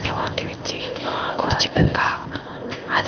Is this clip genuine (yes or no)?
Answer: no